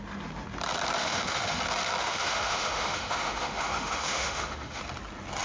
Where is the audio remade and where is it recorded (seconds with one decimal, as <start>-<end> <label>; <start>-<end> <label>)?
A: 0.0-1.0 recorded; 1.0-1.6 remade; 1.6-2.0 recorded; 2.0-4.8 remade; 4.8-5.4 recorded

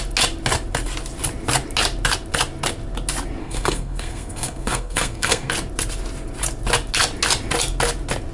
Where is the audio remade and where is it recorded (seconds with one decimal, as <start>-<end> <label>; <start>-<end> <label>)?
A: 0.0-3.4 recorded; 3.4-5.5 remade; 5.5-8.3 recorded